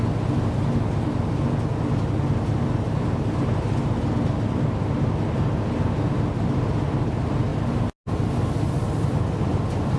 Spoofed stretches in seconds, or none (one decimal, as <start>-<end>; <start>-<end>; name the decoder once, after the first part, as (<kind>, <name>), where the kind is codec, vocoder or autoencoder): none

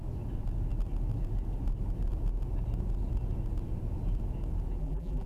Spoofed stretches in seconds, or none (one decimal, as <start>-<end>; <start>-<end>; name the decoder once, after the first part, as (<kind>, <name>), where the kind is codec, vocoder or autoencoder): 4.8-5.3 (vocoder, BigVGAN v2)